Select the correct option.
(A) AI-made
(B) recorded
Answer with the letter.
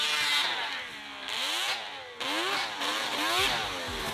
B